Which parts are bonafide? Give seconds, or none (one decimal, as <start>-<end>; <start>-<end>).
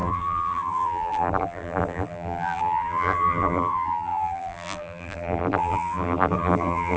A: none